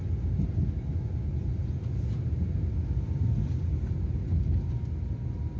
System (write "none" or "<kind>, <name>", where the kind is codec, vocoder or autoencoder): none